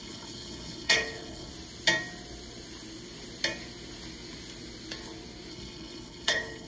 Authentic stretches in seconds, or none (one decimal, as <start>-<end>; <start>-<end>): 1.5-5.5